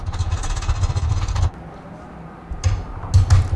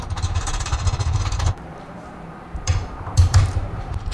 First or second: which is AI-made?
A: second